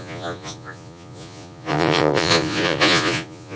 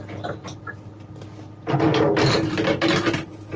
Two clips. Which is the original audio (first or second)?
second